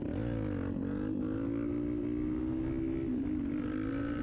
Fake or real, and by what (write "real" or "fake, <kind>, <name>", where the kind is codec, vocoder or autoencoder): real